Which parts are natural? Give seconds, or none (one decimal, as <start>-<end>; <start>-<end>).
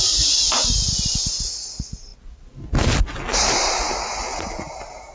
0.0-5.1